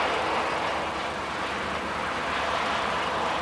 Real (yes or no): yes